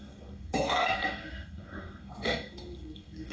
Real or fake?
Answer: fake